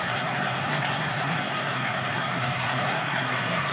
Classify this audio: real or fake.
fake